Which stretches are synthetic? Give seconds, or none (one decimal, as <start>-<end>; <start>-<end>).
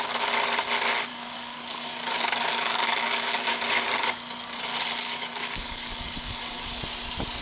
1.1-3.6; 5.0-6.8